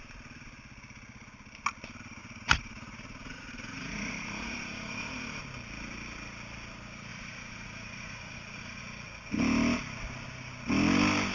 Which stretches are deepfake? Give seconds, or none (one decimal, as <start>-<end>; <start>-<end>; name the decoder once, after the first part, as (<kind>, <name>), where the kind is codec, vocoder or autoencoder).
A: 2.2-5.4 (vocoder, Vocos); 7.1-8.8